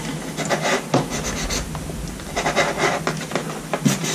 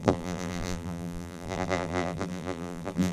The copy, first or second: second